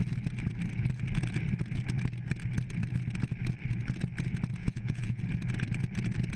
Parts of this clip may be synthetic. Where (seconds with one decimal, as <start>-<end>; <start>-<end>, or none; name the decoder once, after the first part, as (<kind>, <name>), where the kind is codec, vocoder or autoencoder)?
4.6-5.2 (vocoder, Vocos)